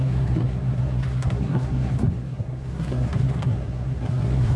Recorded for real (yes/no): no